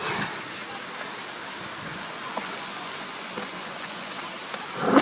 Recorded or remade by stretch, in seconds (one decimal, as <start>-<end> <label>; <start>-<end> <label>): 0.0-1.9 recorded; 1.9-4.2 remade; 4.2-5.0 recorded